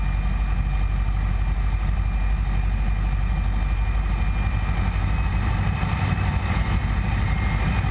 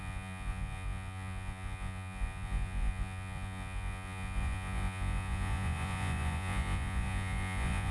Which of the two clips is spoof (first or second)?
second